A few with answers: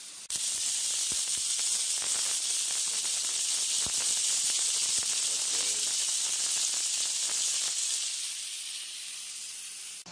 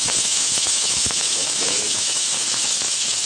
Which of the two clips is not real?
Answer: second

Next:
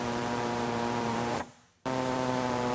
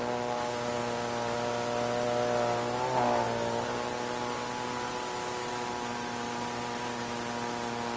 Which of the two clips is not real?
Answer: first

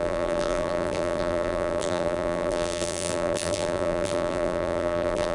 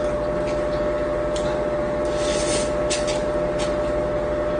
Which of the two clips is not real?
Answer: first